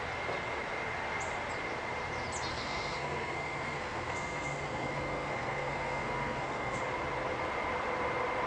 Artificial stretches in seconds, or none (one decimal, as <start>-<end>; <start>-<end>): 2.5-6.8